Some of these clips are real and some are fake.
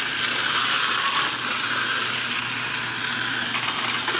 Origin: real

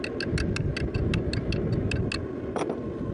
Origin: real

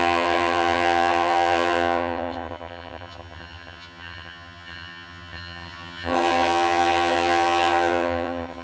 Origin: fake